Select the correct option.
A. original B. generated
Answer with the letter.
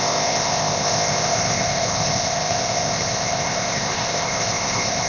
B